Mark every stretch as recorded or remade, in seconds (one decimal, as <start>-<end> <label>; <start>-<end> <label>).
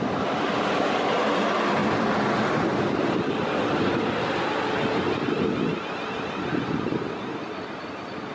0.0-8.3 recorded